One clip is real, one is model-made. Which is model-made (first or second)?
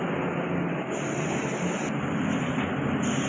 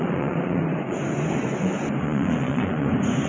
second